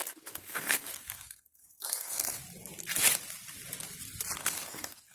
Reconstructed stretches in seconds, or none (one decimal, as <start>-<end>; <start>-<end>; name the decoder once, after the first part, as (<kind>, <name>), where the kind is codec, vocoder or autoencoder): 0.0-2.4 (codec, SNAC); 4.4-5.1